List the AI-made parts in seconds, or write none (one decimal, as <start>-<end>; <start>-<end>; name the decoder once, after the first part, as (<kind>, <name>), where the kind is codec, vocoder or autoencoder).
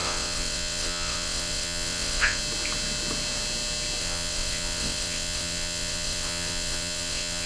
0.0-2.4 (vocoder, WaveNeXt); 4.0-7.5